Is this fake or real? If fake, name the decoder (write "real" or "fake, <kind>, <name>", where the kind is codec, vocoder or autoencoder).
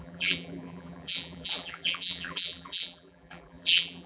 fake, vocoder, BigVGAN v2